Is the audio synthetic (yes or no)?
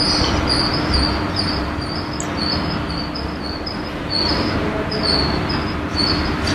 no